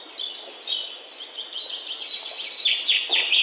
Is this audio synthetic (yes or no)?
no